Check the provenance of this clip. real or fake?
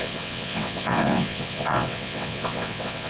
fake